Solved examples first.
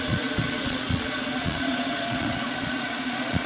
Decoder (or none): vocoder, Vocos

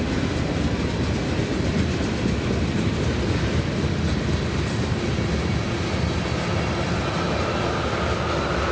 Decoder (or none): none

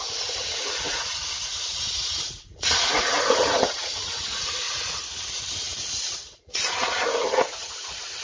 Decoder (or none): vocoder, Vocos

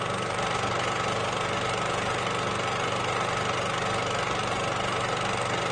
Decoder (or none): none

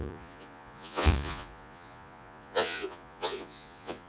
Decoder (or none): vocoder, Vocos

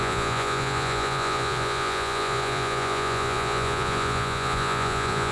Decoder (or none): vocoder, Vocos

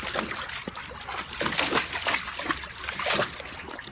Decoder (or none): none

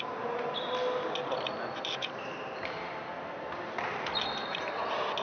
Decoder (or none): none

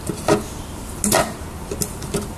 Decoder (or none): none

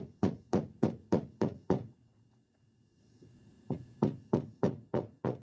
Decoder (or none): vocoder, Vocos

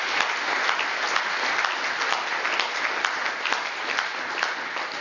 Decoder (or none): none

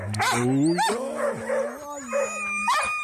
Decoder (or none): none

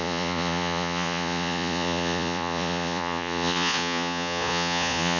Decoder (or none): vocoder, Vocos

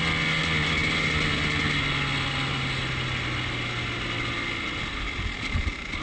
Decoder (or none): none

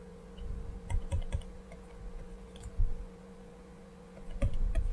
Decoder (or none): vocoder, Vocos